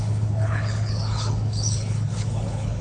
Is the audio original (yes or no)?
no